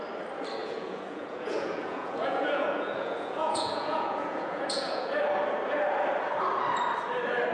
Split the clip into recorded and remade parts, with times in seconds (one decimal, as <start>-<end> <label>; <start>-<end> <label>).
0.0-0.6 recorded; 0.6-5.1 remade; 5.1-7.5 recorded